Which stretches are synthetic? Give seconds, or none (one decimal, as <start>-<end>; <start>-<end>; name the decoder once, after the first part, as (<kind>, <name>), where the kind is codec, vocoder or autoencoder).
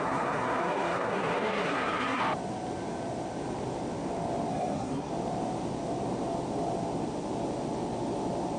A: 0.0-2.2 (codec, SNAC); 4.5-5.1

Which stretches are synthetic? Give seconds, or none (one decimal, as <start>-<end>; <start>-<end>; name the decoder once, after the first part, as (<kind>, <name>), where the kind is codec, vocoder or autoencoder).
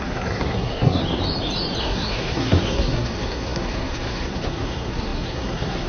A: 0.0-1.0 (codec, SNAC); 1.8-5.9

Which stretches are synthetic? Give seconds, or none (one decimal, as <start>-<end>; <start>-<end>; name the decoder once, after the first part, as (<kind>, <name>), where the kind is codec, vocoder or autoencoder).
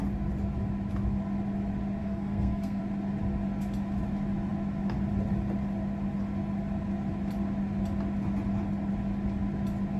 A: 2.0-2.8 (codec, SNAC)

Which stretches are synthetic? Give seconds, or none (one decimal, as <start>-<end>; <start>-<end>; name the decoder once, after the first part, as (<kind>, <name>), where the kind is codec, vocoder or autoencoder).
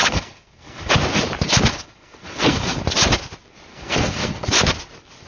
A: 0.0-0.9 (codec, SNAC); 1.7-2.8; 3.7-4.5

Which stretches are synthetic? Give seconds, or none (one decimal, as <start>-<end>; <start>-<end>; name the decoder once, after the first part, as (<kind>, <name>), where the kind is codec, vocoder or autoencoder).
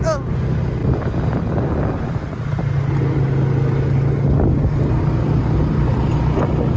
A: none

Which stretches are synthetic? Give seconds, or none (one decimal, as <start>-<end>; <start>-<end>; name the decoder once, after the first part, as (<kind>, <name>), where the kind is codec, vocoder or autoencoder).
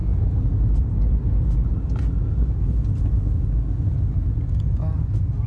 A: none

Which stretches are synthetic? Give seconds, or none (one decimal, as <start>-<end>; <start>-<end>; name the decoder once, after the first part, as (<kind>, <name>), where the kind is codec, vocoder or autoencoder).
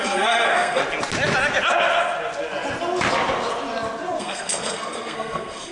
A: 0.0-0.8 (codec, SNAC); 4.2-5.7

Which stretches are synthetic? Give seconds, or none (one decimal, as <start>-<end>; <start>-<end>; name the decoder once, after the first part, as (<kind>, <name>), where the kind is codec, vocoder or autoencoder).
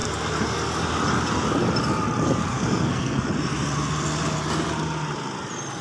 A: 2.5-3.3 (codec, SNAC)